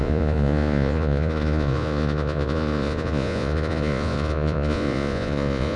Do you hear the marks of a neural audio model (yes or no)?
yes